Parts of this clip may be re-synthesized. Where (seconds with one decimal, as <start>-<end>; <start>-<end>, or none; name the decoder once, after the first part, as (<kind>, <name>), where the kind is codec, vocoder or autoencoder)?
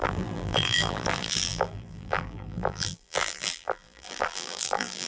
0.0-5.1 (vocoder, BigVGAN v2)